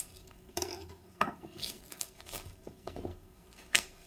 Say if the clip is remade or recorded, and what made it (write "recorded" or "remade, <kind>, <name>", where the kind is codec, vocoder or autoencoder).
remade, codec, SNAC